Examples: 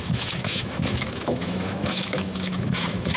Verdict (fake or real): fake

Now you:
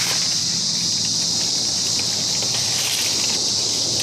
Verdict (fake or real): real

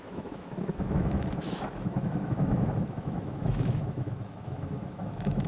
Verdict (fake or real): fake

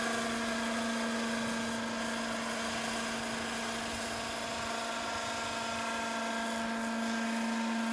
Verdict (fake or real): real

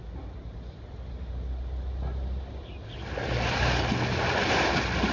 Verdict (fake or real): real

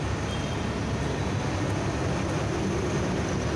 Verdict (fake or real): real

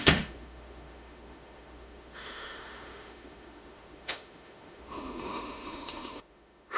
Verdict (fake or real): fake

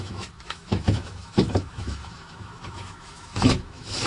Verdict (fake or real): fake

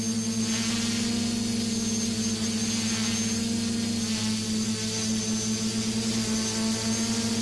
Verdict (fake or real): real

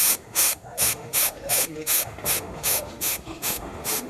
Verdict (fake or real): fake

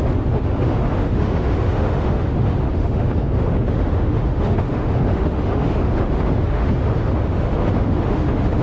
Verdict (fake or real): fake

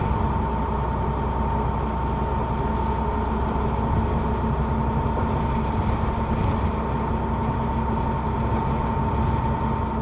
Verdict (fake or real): real